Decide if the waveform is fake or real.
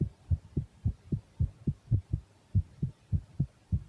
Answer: real